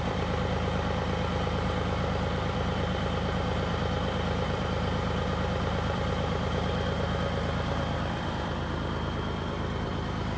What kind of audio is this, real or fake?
fake